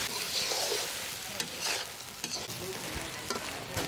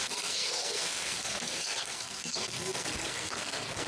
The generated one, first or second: second